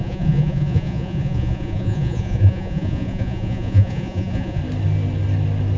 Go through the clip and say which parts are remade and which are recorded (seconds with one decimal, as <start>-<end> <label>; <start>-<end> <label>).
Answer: 0.0-4.6 remade; 4.6-5.8 recorded